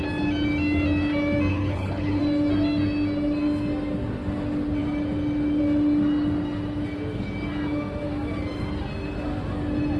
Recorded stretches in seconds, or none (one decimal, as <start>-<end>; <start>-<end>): 0.0-1.5; 2.2-10.0